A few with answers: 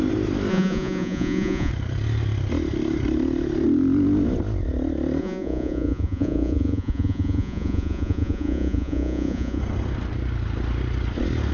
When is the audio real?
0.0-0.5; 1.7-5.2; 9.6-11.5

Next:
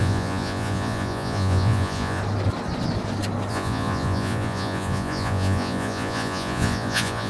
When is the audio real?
2.2-3.5

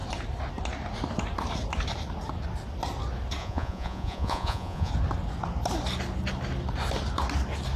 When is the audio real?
0.0-3.4; 4.9-7.8